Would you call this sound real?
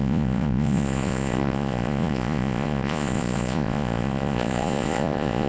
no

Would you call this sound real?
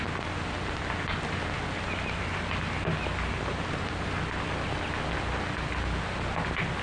yes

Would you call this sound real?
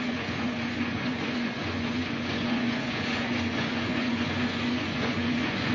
no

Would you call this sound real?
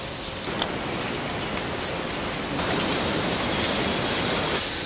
yes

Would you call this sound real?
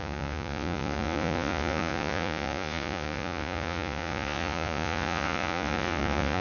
no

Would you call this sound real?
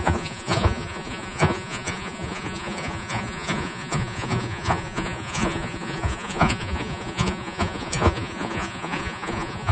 no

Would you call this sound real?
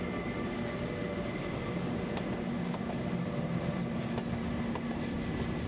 yes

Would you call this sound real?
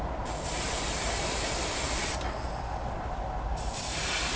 yes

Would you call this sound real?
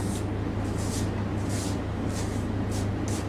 yes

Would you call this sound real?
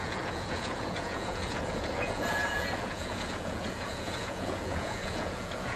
no